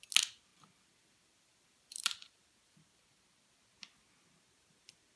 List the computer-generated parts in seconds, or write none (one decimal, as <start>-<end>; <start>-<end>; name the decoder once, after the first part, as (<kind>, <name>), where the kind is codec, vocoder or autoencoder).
0.5-3.6 (vocoder, BigVGAN v2)